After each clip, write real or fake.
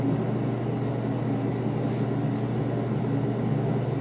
real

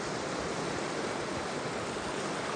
real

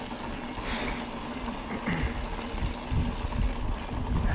real